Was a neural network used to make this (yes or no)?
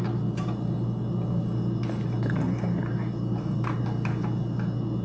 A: no